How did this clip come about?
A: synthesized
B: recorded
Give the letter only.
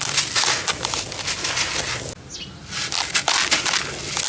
B